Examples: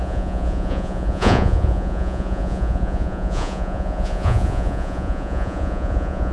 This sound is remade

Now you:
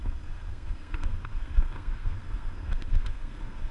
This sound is remade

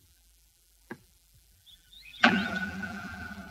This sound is remade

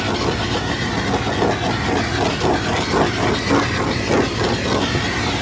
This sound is recorded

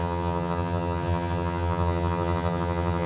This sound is remade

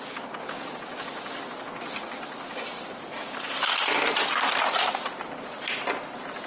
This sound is recorded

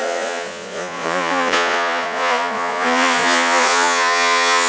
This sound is remade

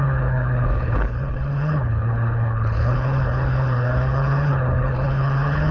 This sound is remade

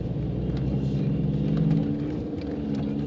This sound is recorded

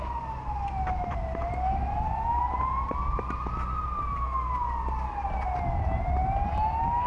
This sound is recorded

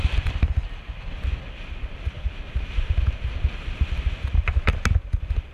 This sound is recorded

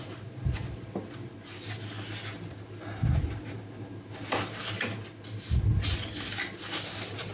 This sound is recorded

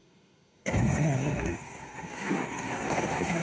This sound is remade